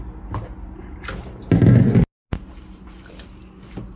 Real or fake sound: real